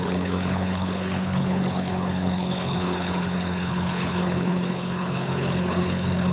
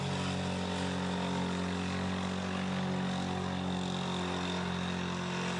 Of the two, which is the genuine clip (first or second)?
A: second